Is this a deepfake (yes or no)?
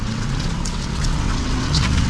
yes